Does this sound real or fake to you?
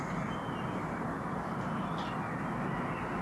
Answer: real